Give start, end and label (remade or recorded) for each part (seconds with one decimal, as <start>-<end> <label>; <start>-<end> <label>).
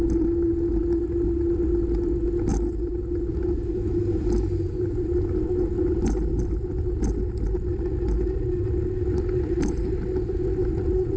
0.0-2.5 recorded; 2.5-5.4 remade; 5.4-11.2 recorded